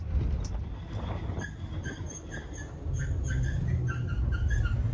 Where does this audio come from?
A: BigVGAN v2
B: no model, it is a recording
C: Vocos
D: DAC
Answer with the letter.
B